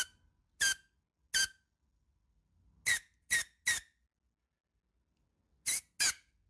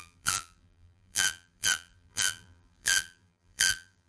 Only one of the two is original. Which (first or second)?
first